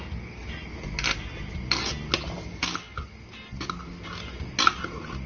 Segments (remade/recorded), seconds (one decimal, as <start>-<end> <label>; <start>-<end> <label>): 0.0-5.3 recorded